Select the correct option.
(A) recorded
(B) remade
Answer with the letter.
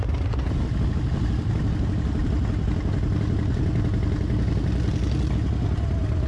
A